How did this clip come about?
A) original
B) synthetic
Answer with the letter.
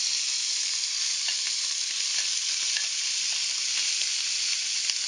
A